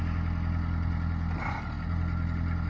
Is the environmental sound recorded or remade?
recorded